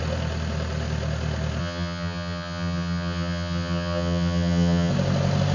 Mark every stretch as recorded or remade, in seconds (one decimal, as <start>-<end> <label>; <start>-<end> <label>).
0.0-1.6 recorded; 1.6-4.9 remade; 4.9-5.5 recorded